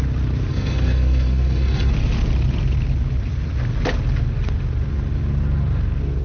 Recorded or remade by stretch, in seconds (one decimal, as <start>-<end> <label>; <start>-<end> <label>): 0.0-0.5 recorded; 0.5-1.9 remade; 1.9-6.2 recorded